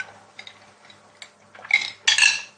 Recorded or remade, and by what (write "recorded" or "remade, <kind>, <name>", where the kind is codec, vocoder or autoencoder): recorded